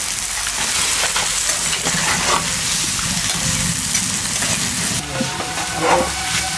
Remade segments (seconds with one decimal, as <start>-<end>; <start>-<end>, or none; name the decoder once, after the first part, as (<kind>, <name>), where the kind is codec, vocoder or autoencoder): none

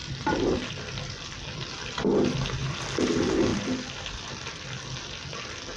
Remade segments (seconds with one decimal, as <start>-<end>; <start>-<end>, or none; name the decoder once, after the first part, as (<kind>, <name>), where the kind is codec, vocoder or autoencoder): 0.0-0.7 (vocoder, BigVGAN v2); 2.6-3.1; 3.5-4.3

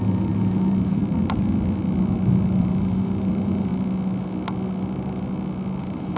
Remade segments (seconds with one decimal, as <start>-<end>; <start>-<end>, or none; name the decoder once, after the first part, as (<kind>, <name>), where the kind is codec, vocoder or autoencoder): 0.0-1.0 (vocoder, BigVGAN v2); 2.6-3.7; 5.8-6.2

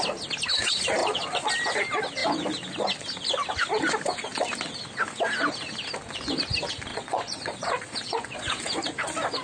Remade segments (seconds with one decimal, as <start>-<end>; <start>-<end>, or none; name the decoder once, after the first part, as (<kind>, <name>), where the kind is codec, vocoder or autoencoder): 1.0-1.5 (vocoder, Vocos); 6.9-8.6

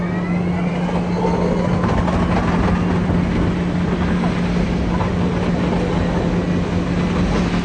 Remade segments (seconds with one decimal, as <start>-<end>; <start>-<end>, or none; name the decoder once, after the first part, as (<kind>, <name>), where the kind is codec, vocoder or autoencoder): none

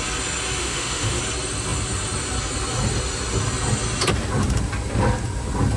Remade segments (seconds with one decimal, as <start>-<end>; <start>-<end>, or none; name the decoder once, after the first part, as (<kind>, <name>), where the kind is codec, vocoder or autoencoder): 0.6-1.2 (autoencoder, DAC-VAE)